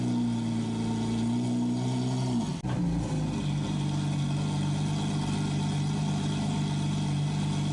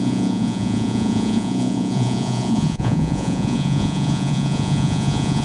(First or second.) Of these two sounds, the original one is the first